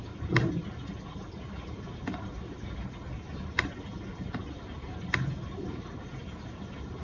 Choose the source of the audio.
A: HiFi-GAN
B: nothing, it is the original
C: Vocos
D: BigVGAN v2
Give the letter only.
B